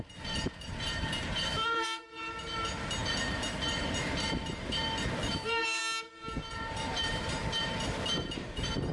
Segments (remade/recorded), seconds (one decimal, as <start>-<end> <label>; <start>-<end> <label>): 0.0-5.8 remade; 5.8-6.5 recorded; 6.5-8.9 remade